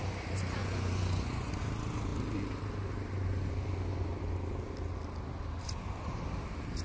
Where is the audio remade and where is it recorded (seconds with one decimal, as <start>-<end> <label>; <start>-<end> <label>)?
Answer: 0.0-0.6 recorded; 0.6-1.5 remade; 1.5-6.8 recorded